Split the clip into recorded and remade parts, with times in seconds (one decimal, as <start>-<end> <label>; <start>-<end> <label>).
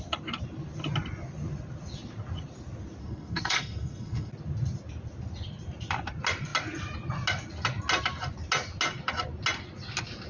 0.0-3.0 recorded; 3.0-4.3 remade; 4.3-10.3 recorded